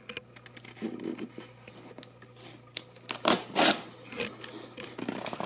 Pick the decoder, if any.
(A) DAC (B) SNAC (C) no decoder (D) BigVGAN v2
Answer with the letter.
C